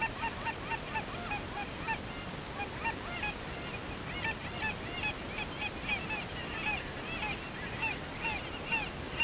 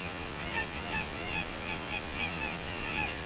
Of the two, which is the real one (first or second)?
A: first